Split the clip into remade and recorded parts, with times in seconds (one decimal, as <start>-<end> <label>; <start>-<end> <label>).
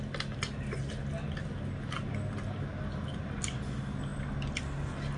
0.0-5.2 recorded